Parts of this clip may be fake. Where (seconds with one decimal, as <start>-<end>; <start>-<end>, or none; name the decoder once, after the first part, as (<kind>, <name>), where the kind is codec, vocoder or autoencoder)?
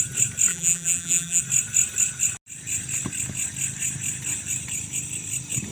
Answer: 0.5-1.4 (vocoder, BigVGAN v2)